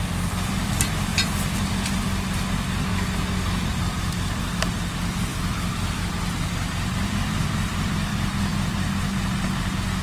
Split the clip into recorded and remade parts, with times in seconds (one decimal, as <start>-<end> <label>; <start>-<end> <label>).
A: 0.0-1.1 recorded; 1.1-2.0 remade; 2.0-10.0 recorded